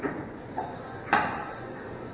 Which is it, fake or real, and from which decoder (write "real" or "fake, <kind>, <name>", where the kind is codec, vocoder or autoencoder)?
fake, vocoder, Vocos